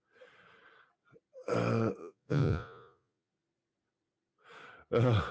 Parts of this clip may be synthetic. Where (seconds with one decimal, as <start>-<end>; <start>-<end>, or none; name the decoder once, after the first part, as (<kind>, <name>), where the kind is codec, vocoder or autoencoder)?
2.0-3.3 (vocoder, Vocos)